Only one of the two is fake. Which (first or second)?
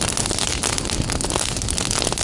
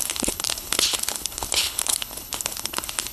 second